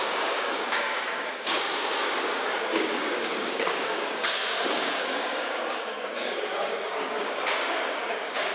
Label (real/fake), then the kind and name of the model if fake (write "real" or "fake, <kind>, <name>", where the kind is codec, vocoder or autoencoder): fake, codec, DAC